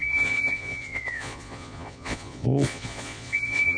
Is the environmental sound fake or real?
fake